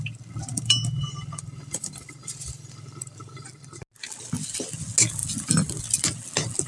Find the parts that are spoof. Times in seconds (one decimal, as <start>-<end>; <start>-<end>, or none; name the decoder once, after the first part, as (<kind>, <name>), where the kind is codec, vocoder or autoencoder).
0.5-3.5 (vocoder, BigVGAN v2)